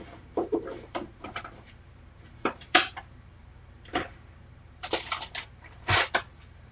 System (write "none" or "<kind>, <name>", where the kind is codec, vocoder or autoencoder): vocoder, BigVGAN v2